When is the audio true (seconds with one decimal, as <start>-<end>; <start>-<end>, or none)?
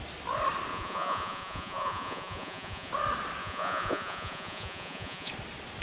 0.0-0.7; 2.9-3.4; 5.3-5.8